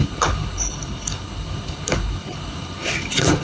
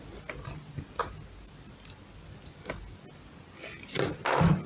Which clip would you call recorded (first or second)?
second